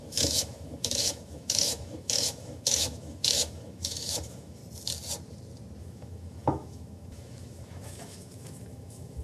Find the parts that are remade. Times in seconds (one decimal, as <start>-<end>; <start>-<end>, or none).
0.0-4.6; 5.8-9.2